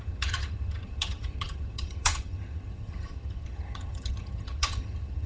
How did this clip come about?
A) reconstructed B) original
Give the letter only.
A